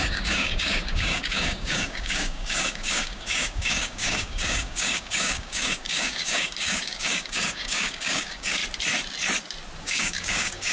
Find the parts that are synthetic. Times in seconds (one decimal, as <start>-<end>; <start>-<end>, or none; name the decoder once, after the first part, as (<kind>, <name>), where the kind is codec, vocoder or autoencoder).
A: 0.0-8.6 (codec, DAC); 9.8-10.7